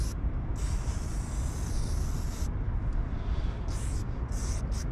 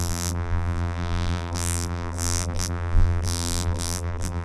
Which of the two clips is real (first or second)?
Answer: first